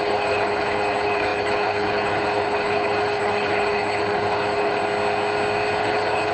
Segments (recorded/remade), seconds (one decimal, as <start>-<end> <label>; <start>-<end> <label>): 0.0-4.8 remade; 4.8-5.8 recorded; 5.8-6.3 remade